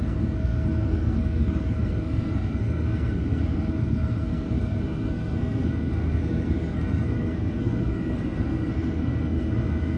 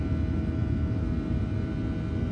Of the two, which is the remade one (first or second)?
first